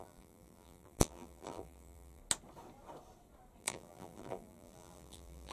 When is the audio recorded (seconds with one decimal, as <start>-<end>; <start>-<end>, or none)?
2.2-3.6

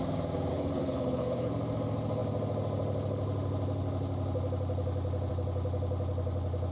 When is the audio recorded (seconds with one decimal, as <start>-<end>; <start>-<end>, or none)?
0.0-0.5; 1.5-6.7

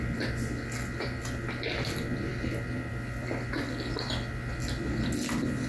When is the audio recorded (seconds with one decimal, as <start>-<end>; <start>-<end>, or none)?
0.0-5.7

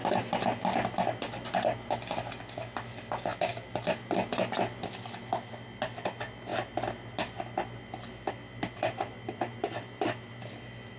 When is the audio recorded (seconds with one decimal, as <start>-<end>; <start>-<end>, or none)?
0.6-3.3; 4.9-11.0